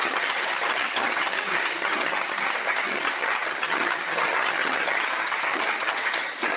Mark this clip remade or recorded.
remade